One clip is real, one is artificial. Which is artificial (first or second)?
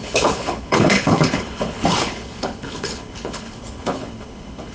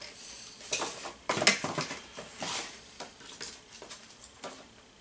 first